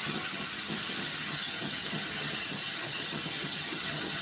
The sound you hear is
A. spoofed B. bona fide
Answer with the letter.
A